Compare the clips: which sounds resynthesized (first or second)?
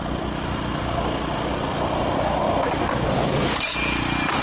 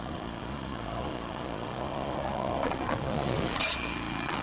second